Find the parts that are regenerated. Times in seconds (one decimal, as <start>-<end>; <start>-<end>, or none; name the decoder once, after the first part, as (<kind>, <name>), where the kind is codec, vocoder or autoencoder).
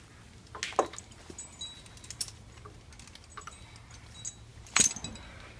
none